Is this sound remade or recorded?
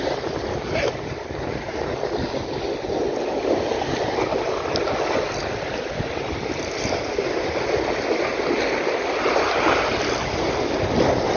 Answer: recorded